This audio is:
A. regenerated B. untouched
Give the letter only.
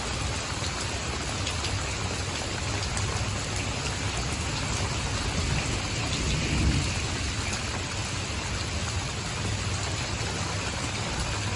B